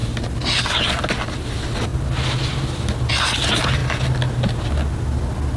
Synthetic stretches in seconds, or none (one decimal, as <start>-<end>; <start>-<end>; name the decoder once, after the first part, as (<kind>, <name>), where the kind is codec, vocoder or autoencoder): none